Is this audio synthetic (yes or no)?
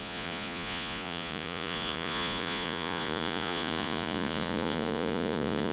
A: yes